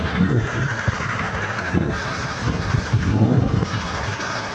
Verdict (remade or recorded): remade